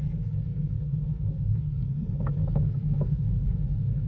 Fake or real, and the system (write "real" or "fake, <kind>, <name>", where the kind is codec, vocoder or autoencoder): fake, codec, SNAC